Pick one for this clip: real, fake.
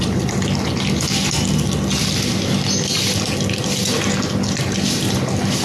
real